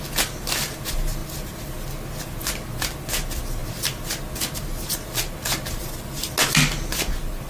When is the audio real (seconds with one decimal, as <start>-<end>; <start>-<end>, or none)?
0.0-7.5